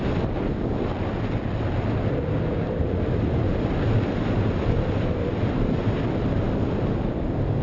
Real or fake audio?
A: fake